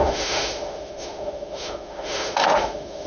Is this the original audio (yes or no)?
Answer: no